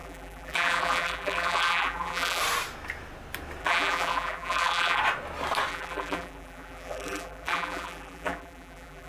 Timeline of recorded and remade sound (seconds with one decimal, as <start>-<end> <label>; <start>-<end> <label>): 0.0-2.4 remade; 2.4-3.6 recorded; 3.6-5.0 remade; 5.0-5.7 recorded; 5.7-9.1 remade